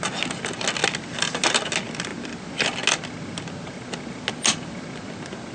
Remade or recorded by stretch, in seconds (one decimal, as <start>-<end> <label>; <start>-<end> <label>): 0.0-5.5 recorded